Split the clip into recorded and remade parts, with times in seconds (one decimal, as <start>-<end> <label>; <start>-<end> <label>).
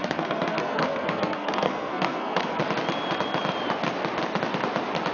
0.0-2.6 remade; 2.6-5.1 recorded